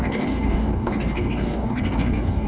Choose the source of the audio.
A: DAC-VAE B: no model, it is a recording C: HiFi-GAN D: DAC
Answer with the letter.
D